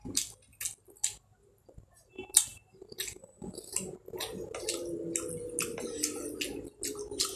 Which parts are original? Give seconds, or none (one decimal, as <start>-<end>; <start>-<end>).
0.0-7.4